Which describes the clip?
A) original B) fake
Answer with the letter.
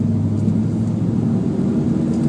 A